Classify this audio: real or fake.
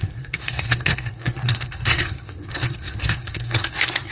fake